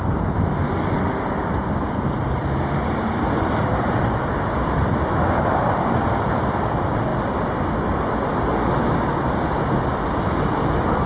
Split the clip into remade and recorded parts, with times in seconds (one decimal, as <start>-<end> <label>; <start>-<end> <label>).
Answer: 0.0-11.1 remade